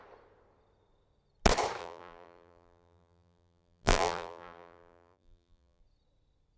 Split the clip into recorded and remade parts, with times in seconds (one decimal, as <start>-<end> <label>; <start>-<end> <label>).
0.0-1.8 recorded; 1.8-5.8 remade; 5.8-6.6 recorded